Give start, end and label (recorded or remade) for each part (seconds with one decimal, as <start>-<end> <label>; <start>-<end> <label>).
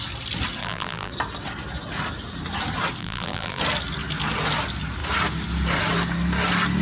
0.0-0.6 recorded; 0.6-1.1 remade; 1.1-3.0 recorded; 3.0-3.6 remade; 3.6-6.8 recorded